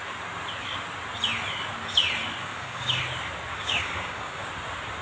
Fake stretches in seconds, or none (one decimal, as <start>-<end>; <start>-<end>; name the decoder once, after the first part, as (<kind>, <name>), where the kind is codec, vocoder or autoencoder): 2.4-3.0 (codec, DAC); 3.5-4.5